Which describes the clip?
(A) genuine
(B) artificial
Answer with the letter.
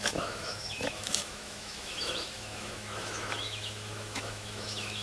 B